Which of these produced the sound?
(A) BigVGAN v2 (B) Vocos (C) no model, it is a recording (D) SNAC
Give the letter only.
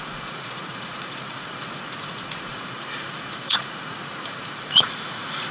B